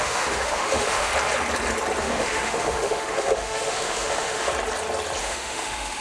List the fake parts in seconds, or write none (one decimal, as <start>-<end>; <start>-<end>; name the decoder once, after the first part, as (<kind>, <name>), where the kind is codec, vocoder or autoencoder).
0.0-1.1 (autoencoder, DAC-VAE); 2.0-4.5; 5.2-6.0

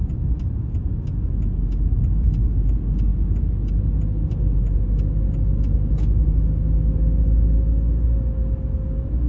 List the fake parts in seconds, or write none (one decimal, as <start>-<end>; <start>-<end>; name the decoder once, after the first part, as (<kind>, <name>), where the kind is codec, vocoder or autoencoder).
none

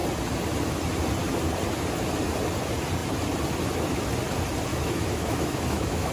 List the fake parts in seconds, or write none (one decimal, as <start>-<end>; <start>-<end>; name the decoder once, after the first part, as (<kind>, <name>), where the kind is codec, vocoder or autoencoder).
4.7-6.1 (autoencoder, DAC-VAE)

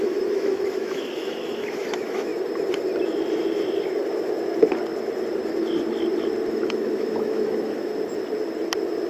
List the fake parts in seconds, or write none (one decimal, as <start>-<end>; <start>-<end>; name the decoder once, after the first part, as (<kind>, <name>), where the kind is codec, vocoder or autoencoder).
0.0-2.3 (autoencoder, DAC-VAE); 6.5-7.9

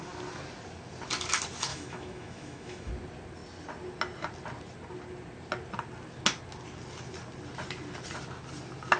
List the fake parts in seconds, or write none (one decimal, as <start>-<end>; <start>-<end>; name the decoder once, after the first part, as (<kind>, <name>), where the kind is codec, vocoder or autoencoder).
1.7-2.9 (autoencoder, DAC-VAE)